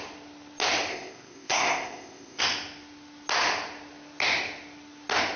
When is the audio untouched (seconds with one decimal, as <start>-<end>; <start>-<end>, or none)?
0.0-0.9; 2.4-5.4